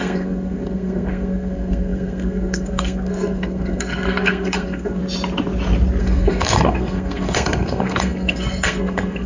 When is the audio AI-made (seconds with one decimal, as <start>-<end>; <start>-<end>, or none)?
0.0-5.0; 6.0-9.3